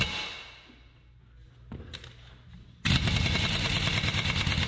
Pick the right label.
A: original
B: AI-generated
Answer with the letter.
A